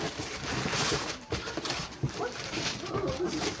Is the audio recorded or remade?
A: remade